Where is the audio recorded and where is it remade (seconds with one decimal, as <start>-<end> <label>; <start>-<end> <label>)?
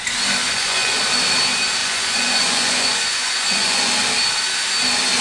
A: 0.0-0.4 recorded; 0.4-1.0 remade; 1.0-1.8 recorded; 1.8-3.9 remade; 3.9-5.2 recorded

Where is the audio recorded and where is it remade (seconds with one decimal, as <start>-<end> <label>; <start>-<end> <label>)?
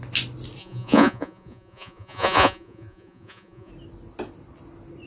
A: 0.0-0.6 recorded; 0.6-3.7 remade; 3.7-5.1 recorded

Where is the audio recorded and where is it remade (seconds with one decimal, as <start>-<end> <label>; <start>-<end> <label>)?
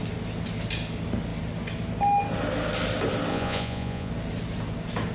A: 0.0-3.3 recorded; 3.3-4.1 remade; 4.1-5.1 recorded